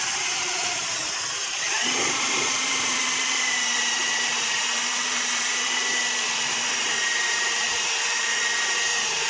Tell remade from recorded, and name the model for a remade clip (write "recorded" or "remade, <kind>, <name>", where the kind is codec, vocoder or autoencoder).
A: remade, vocoder, BigVGAN v2